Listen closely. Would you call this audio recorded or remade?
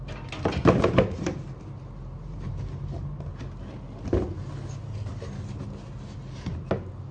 recorded